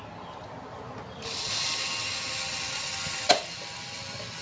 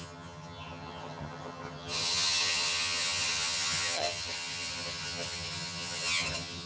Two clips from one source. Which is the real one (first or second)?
first